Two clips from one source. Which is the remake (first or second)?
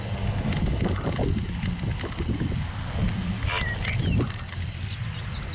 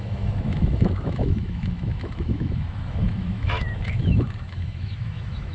second